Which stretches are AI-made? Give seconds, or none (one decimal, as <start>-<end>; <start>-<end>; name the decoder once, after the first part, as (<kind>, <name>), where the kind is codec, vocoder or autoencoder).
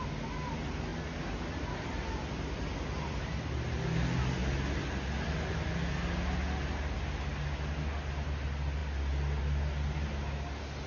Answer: none